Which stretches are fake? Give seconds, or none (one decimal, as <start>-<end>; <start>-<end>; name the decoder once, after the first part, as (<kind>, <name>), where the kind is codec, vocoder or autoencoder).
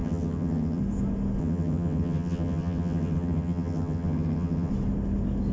0.0-0.8 (vocoder, HiFi-GAN); 1.4-4.7